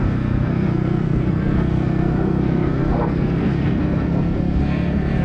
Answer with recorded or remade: remade